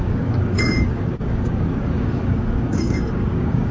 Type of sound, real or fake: fake